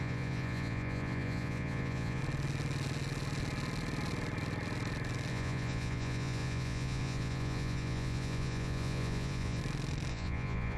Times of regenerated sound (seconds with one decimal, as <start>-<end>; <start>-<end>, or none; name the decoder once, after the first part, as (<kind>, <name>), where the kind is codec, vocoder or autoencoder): 0.0-2.2 (vocoder, Vocos); 5.3-9.6; 10.1-10.8